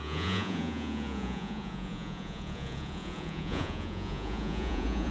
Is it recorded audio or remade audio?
remade